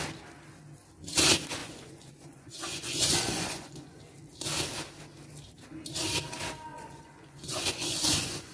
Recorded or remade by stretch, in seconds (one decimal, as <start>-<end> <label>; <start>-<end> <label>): 0.0-1.6 recorded; 1.6-4.0 remade; 4.0-6.7 recorded; 6.7-8.5 remade